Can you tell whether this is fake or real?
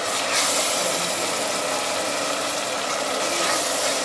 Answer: real